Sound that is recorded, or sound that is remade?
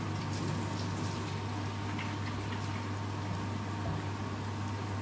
recorded